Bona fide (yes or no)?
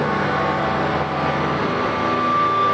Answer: yes